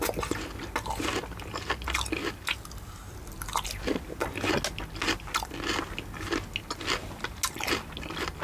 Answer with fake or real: real